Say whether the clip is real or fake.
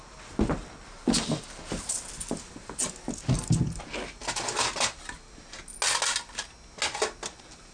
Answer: real